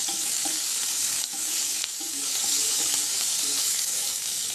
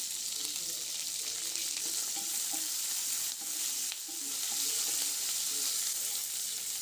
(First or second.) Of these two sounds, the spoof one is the first